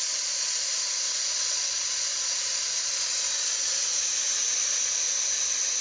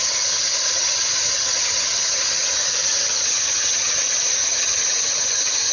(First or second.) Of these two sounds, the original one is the first